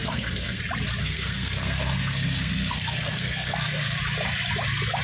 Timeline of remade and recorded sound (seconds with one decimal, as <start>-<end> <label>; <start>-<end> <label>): 0.0-0.6 remade; 0.6-1.0 recorded; 1.0-4.0 remade; 4.0-5.0 recorded